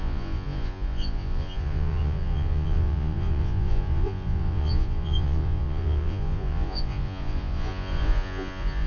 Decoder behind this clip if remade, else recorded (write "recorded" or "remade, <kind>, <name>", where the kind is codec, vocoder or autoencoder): remade, vocoder, Vocos